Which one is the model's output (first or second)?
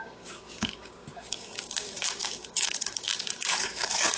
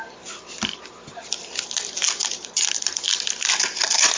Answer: first